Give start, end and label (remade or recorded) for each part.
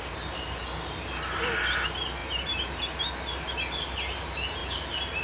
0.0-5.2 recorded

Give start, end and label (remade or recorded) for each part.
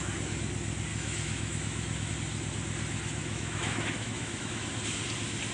0.0-0.9 recorded; 0.9-2.1 remade; 2.1-3.2 recorded; 3.2-4.7 remade; 4.7-5.5 recorded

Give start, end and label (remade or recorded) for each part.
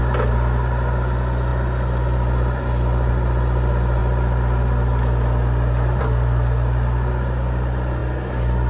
0.0-8.7 recorded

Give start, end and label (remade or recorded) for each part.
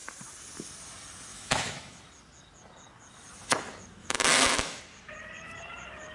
0.0-1.3 recorded; 1.3-2.0 remade; 2.0-4.0 recorded; 4.0-4.8 remade; 4.8-6.1 recorded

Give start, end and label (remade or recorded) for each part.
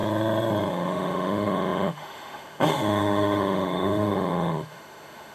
0.0-0.7 recorded; 0.7-5.3 remade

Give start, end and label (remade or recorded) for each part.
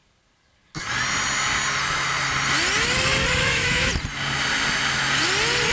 0.0-3.4 recorded; 3.4-3.9 remade; 3.9-5.7 recorded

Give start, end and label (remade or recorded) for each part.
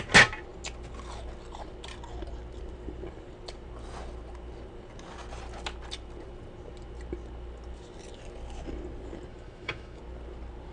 0.0-9.3 recorded; 9.3-10.0 remade; 10.0-10.7 recorded